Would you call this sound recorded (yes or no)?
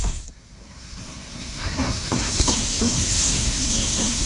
no